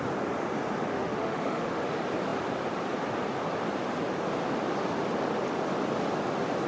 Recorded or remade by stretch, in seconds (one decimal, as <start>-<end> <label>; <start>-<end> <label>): 0.0-0.9 recorded; 0.9-1.8 remade; 1.8-6.7 recorded